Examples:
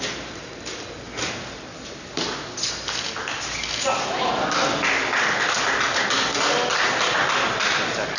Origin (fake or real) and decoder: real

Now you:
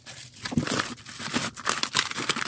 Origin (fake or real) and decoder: fake, vocoder, BigVGAN v2